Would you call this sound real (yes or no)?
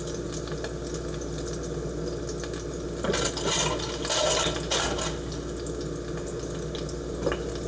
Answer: yes